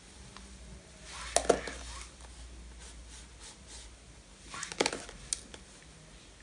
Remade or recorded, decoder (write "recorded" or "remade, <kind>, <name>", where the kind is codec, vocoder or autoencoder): recorded